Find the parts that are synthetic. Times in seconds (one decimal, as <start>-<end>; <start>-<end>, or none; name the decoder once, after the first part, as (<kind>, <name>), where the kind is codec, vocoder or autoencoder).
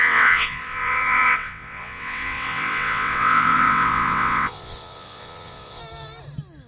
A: 0.0-5.8 (vocoder, WaveNeXt)